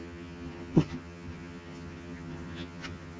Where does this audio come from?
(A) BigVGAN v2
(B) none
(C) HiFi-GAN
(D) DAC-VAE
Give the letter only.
C